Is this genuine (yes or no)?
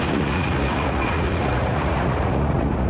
no